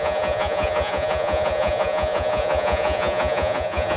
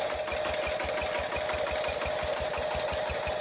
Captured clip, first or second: second